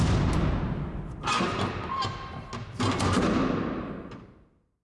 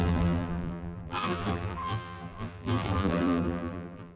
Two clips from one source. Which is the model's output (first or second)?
second